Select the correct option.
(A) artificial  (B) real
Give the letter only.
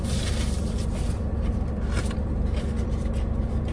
B